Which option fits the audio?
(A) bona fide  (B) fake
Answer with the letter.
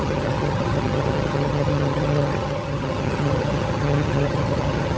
B